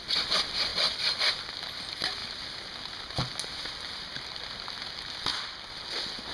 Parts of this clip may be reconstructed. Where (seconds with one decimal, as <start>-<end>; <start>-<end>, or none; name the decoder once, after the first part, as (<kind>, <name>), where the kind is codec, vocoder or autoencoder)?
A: 0.7-1.3 (vocoder, BigVGAN v2)